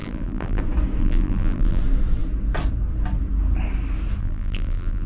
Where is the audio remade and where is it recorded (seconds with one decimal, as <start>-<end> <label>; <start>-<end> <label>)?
0.0-0.6 remade; 0.6-1.0 recorded; 1.0-1.8 remade; 1.8-4.2 recorded; 4.2-5.1 remade

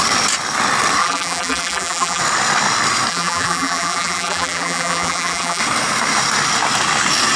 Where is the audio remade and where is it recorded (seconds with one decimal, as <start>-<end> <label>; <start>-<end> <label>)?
0.0-1.0 recorded; 1.0-2.2 remade; 2.2-3.1 recorded; 3.1-5.6 remade; 5.6-7.4 recorded

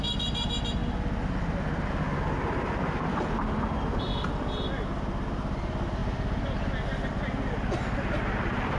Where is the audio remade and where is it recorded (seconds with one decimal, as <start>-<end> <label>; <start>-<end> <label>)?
0.0-8.8 recorded

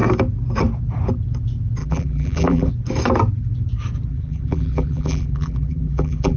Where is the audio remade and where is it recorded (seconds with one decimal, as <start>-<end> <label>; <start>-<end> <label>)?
0.0-1.8 recorded; 1.8-2.7 remade; 2.7-4.1 recorded; 4.1-6.4 remade

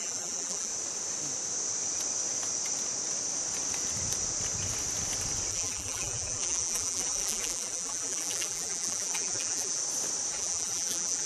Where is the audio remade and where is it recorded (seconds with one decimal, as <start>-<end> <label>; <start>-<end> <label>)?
0.0-0.7 remade; 0.7-5.5 recorded; 5.5-9.8 remade; 9.8-10.3 recorded; 10.3-11.3 remade

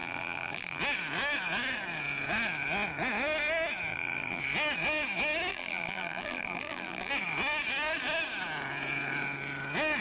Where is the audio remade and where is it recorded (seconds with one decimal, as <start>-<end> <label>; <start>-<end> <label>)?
0.0-0.8 remade; 0.8-3.9 recorded; 3.9-4.4 remade; 4.4-5.5 recorded; 5.5-7.1 remade; 7.1-10.0 recorded